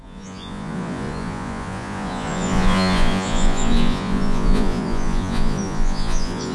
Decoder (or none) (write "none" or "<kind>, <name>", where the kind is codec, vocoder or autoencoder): vocoder, Vocos